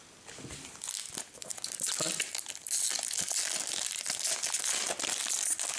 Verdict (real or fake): real